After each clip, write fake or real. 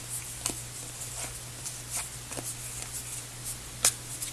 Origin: real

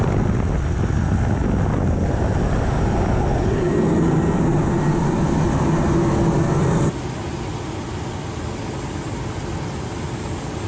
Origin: real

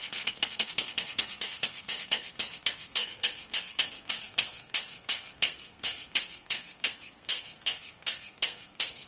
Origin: fake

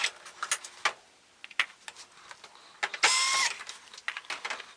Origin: real